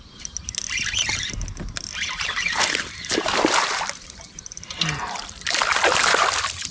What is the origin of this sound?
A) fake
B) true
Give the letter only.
B